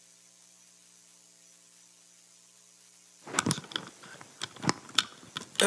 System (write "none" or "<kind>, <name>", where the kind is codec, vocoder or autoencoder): none